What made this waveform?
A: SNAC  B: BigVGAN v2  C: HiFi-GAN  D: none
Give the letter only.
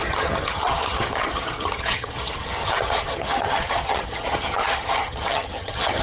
C